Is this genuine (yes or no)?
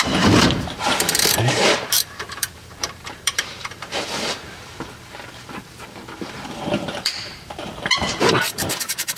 no